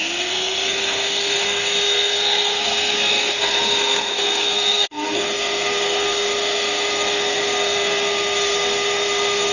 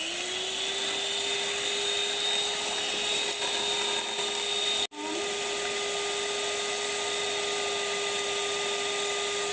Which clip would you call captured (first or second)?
second